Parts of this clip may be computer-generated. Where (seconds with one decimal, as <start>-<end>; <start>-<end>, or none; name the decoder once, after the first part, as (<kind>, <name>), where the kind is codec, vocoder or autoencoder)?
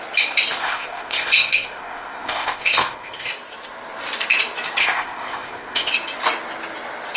0.6-3.3 (codec, ZipCodec); 4.8-5.9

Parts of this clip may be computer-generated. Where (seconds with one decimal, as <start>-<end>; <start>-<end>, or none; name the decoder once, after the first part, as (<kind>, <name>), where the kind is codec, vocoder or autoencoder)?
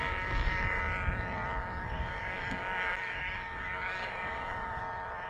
0.0-0.8 (codec, DAC); 1.6-4.8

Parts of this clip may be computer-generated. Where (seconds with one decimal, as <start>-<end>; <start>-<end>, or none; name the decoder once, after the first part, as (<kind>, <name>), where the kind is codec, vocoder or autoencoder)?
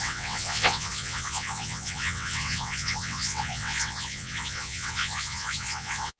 0.0-6.2 (vocoder, WaveNeXt)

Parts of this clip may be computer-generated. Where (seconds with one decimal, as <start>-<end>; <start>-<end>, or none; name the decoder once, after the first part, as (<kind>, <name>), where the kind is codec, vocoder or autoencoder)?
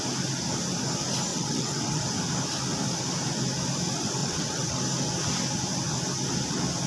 1.3-2.0 (vocoder, WaveNeXt); 4.2-4.8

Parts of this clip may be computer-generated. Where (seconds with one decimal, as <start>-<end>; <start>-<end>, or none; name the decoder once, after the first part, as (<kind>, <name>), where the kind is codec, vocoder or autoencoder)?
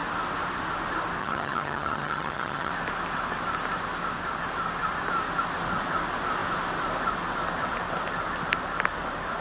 1.2-2.7 (vocoder, HiFi-GAN)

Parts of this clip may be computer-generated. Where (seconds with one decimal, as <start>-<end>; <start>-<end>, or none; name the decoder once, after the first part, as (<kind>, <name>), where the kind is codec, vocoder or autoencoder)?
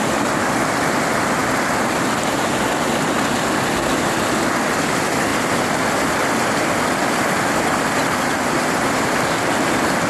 none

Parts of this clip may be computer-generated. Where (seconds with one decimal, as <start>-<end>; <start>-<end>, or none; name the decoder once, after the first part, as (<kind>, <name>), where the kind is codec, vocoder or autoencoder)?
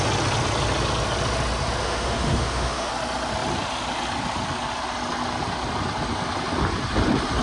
1.8-2.9 (autoencoder, DAC-VAE)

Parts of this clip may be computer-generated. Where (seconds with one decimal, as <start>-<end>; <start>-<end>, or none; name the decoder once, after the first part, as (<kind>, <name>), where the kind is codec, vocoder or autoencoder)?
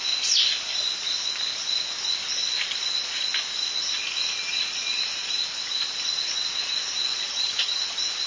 7.1-7.8 (vocoder, HiFi-GAN)